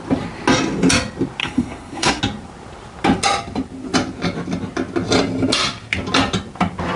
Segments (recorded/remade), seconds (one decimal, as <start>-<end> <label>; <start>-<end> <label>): 0.0-1.4 recorded; 1.4-2.2 remade; 2.2-7.0 recorded